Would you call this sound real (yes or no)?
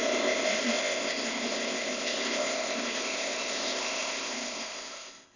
no